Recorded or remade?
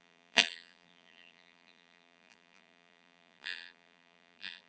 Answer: remade